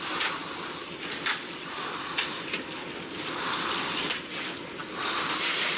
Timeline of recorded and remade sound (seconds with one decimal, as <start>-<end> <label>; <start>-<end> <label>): 0.0-5.8 recorded